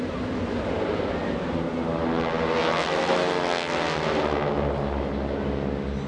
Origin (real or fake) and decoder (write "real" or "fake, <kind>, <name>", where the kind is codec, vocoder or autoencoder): real